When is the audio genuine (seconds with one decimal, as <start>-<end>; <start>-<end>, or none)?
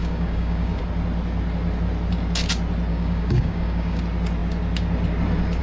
0.8-2.9; 4.0-5.6